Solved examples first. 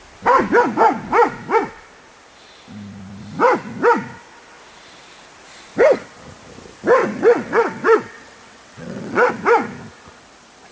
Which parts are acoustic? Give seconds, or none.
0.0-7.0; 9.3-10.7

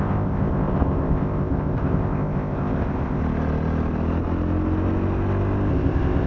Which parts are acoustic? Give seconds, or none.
3.2-5.7

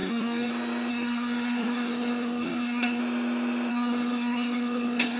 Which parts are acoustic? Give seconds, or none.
0.5-0.9; 3.0-3.7

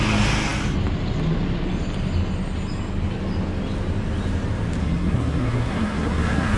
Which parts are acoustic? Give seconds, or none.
0.0-4.8

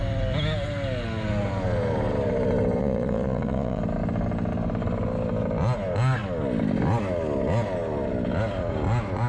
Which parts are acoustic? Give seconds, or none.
0.0-2.8; 3.8-9.3

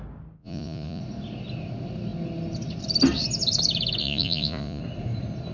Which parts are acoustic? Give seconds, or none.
0.0-0.4; 1.0-4.0; 4.8-5.5